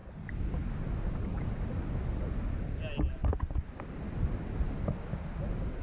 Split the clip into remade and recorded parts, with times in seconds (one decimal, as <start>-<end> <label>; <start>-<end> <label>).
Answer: 0.0-5.8 recorded